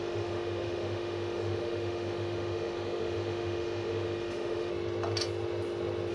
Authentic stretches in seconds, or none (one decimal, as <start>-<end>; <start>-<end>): 4.7-6.1